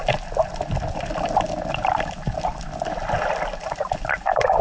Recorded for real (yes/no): yes